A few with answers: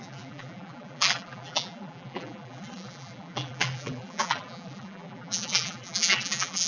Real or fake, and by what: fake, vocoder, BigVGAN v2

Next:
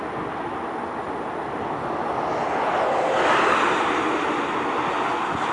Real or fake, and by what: real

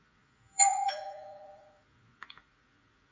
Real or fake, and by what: fake, vocoder, Vocos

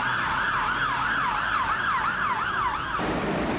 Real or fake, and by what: real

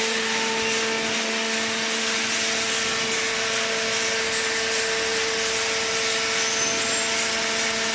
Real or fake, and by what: real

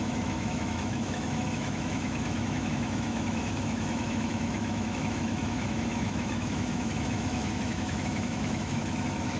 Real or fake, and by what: fake, autoencoder, DAC-VAE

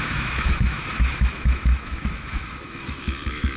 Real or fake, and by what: fake, autoencoder, DAC-VAE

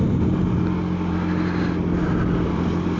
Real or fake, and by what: real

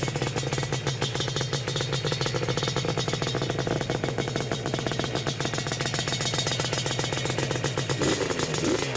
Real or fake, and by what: real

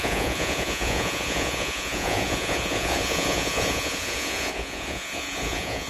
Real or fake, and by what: fake, vocoder, Vocos